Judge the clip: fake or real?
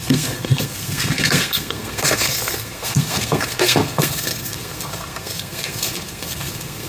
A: fake